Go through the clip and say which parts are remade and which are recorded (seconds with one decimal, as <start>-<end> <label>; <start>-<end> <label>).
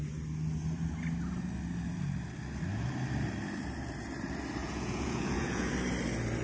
0.0-4.6 recorded; 4.6-5.7 remade; 5.7-6.4 recorded